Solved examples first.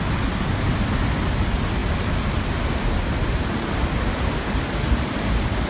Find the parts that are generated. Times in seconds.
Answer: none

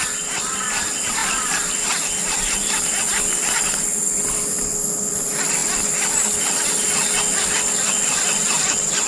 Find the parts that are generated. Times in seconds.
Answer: none

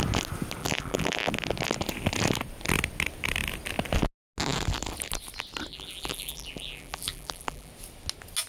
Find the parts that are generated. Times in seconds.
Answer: 0.6-1.3 (vocoder, BigVGAN v2); 5.7-7.7

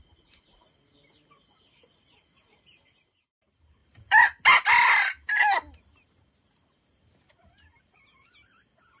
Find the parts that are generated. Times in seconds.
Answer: none